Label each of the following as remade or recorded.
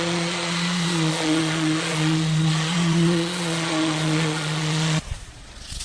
remade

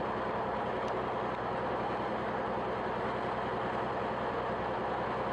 recorded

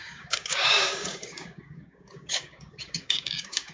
remade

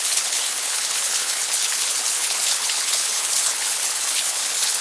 remade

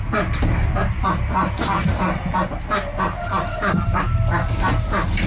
recorded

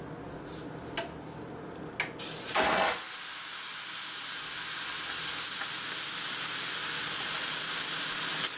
recorded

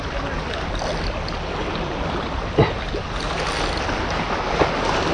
recorded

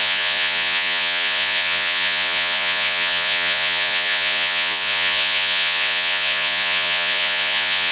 remade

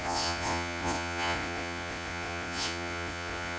remade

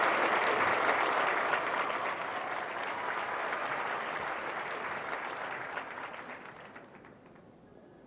remade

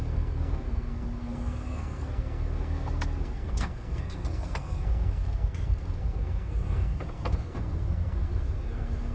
remade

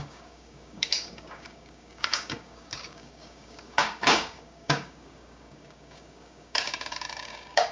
remade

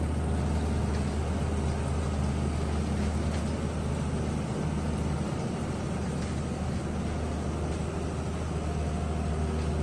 recorded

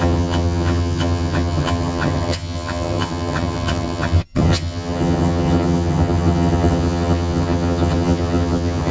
remade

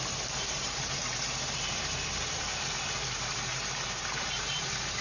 remade